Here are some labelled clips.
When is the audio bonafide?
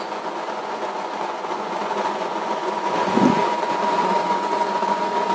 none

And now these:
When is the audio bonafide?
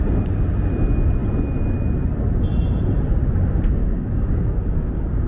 0.0-3.8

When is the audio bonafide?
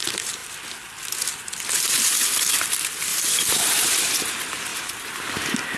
0.0-3.1; 4.1-4.7; 5.3-5.8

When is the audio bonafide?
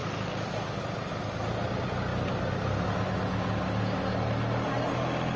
0.0-5.4